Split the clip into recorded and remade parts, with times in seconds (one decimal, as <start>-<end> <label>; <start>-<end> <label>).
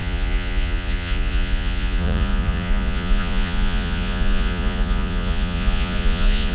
0.0-6.5 remade